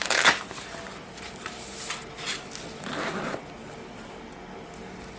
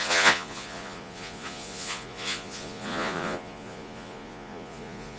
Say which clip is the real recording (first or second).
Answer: first